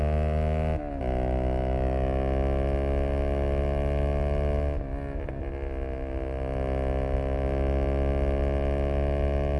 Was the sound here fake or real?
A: real